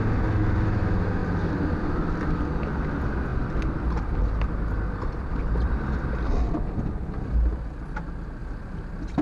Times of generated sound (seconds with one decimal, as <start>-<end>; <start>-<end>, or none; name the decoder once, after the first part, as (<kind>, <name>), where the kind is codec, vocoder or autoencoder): 1.2-1.8 (vocoder, BigVGAN v2); 3.3-5.7; 8.4-9.2